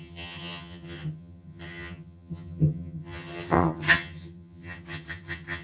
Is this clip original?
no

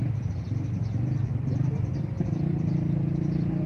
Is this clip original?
yes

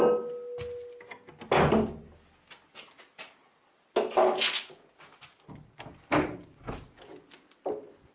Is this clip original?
yes